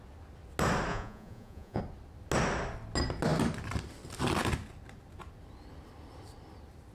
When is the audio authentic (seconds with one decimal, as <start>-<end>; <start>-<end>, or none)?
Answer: 0.0-0.9; 1.8-6.9